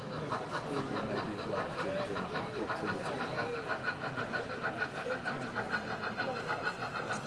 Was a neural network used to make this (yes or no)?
no